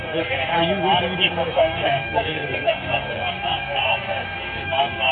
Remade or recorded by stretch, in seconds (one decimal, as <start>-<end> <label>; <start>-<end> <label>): 0.0-0.5 remade; 0.5-1.3 recorded; 1.3-5.1 remade